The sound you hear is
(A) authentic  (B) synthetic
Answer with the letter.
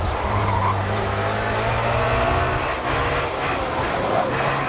A